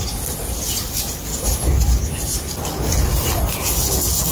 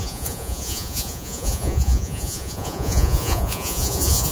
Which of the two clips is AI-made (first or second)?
second